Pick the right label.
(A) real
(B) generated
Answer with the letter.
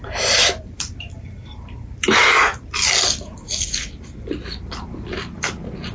B